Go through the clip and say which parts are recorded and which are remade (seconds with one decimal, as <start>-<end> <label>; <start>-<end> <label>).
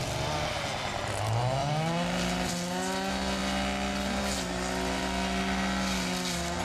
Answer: 0.0-1.6 recorded; 1.6-2.5 remade; 2.5-6.6 recorded